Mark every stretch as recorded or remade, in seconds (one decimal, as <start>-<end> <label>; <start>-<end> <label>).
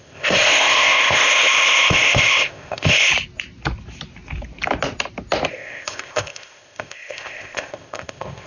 0.0-3.1 remade; 3.1-5.5 recorded; 5.5-8.5 remade